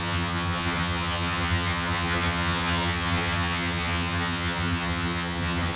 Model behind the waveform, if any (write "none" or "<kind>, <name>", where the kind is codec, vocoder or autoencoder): vocoder, HiFi-GAN